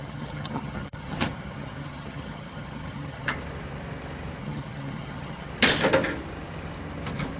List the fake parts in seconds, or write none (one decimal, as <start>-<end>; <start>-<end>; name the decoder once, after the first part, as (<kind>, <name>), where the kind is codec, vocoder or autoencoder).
0.0-3.3 (vocoder, HiFi-GAN); 4.4-5.5